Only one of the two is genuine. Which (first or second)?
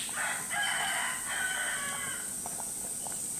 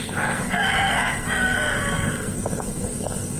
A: first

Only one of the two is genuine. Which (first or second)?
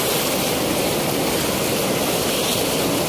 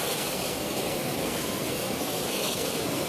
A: first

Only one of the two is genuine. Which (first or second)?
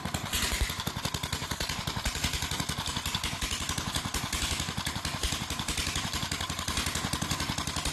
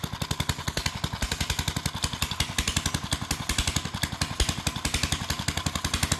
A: second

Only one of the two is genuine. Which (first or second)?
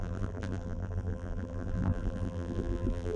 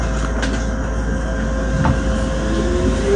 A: second